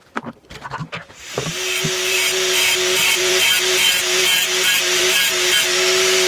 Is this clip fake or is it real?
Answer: fake